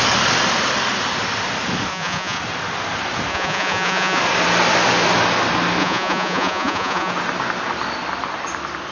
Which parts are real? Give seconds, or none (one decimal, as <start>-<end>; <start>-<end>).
0.0-1.9; 2.4-3.3; 4.2-5.8; 7.1-8.9